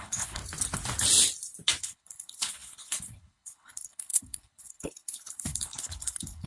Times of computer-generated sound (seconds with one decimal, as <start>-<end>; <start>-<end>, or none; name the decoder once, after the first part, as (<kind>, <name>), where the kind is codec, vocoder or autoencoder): 0.0-0.4 (codec, HILCodec); 1.8-6.5